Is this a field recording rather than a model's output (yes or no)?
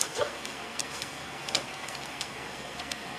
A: no